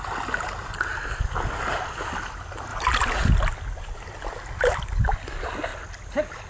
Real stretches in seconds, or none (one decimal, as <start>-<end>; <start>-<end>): 0.0-2.7; 3.3-6.5